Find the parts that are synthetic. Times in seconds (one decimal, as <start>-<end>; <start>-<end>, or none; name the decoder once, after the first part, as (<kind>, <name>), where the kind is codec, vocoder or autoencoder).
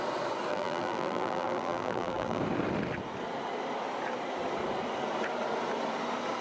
0.5-2.4 (vocoder, BigVGAN v2)